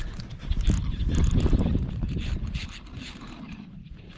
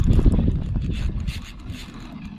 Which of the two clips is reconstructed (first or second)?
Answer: first